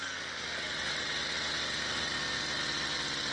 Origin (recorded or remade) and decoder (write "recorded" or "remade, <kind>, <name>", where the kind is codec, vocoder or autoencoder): recorded